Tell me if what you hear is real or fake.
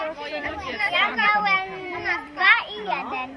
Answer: fake